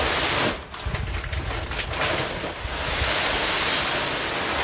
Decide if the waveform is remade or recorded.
recorded